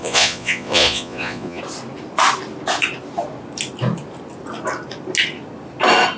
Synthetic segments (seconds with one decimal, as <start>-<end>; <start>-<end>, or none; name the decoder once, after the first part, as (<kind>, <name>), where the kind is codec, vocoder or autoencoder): 0.0-1.6 (vocoder, Vocos)